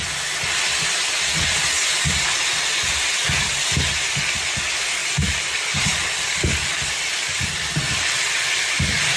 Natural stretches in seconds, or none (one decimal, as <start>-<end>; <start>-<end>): 0.0-5.0; 8.5-9.2